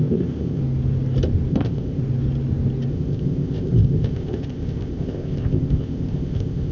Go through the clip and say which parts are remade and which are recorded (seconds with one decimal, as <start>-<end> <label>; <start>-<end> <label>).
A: 0.0-0.6 remade; 0.6-1.5 recorded; 1.5-2.0 remade; 2.0-2.9 recorded; 2.9-6.7 remade